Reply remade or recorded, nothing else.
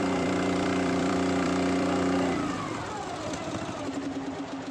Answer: remade